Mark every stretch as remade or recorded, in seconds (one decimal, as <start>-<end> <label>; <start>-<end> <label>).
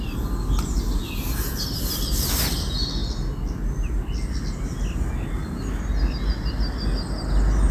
0.0-7.7 recorded